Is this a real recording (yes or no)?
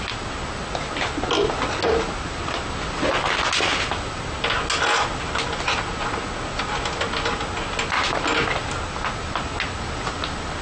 yes